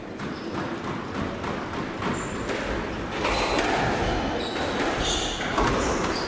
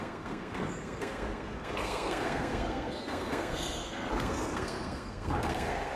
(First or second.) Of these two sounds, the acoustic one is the first